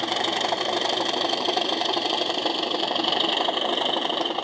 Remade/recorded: recorded